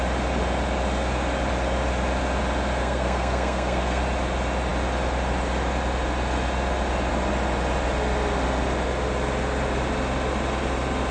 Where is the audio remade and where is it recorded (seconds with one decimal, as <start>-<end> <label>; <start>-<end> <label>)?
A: 0.0-2.8 recorded; 2.8-4.0 remade; 4.0-11.1 recorded